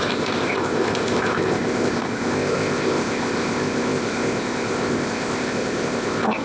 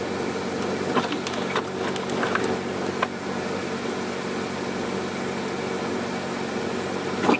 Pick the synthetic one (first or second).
first